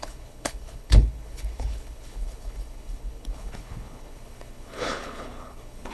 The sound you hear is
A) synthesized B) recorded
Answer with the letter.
A